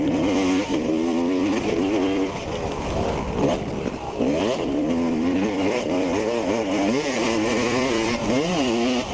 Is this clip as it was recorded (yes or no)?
no